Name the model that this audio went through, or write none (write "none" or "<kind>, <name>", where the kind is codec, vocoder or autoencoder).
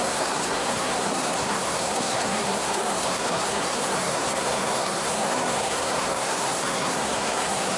codec, SNAC